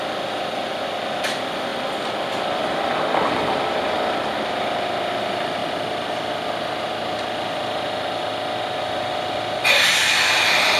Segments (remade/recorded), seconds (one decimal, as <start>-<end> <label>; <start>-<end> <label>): 0.0-10.8 recorded